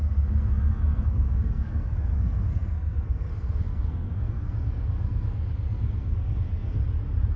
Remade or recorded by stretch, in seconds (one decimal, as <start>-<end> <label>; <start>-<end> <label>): 0.0-6.8 remade; 6.8-7.4 recorded

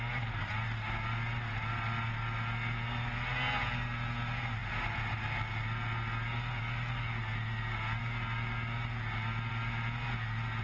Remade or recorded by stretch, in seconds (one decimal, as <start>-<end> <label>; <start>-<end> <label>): 0.0-10.6 recorded